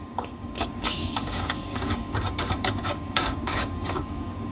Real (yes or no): no